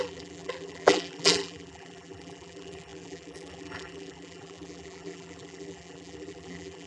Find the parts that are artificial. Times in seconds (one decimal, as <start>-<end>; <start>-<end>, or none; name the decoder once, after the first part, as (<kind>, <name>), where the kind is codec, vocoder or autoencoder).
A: 0.0-6.9 (vocoder, BigVGAN v2)